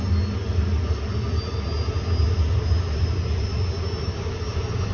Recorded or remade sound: recorded